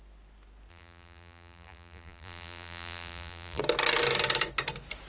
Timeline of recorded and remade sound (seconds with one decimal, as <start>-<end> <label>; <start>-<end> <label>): 0.0-0.7 recorded; 0.7-3.6 remade; 3.6-5.1 recorded